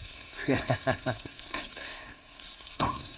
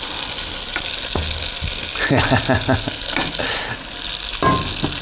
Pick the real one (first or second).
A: second